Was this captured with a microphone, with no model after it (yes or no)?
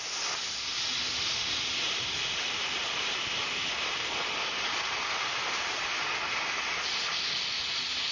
yes